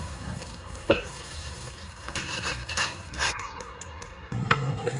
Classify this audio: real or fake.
fake